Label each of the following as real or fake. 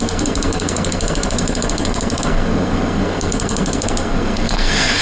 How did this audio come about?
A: fake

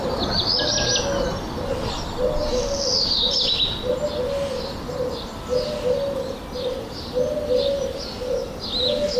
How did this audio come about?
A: real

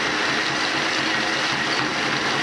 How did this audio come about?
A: real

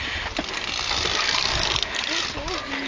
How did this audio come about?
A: real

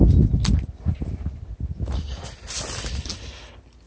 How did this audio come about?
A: real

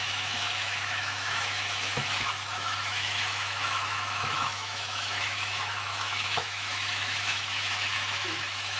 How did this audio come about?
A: fake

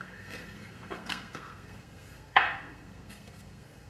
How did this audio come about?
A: fake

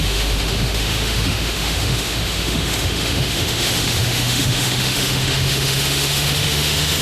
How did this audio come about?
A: fake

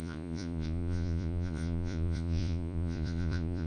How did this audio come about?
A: fake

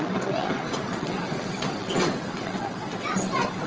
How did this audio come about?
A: fake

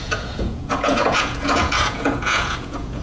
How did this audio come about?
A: fake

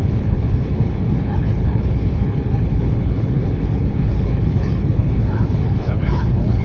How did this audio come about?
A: fake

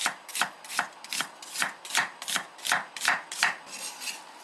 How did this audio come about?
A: real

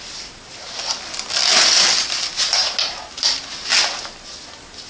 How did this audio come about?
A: real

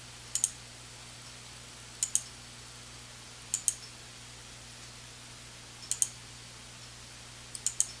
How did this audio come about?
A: real